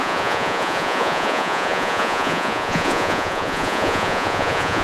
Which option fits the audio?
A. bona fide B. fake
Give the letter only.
B